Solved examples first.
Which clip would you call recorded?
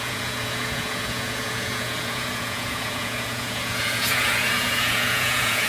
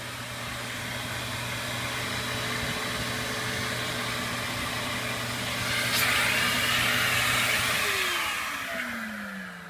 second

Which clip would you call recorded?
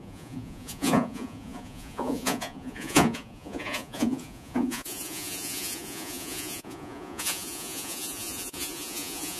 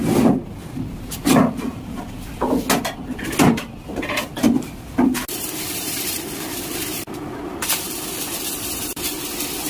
second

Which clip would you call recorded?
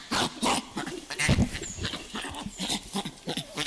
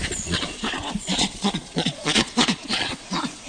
first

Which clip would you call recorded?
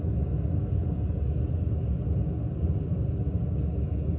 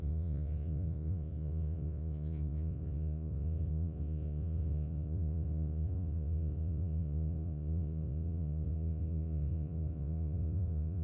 first